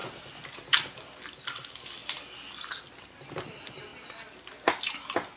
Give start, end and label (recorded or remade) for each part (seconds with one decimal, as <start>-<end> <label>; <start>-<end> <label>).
0.0-5.4 recorded